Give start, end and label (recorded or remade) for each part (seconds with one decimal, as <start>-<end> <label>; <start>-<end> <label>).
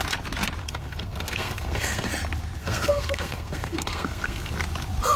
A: 0.0-0.6 recorded; 0.6-2.1 remade; 2.1-2.6 recorded; 2.6-4.5 remade; 4.5-5.2 recorded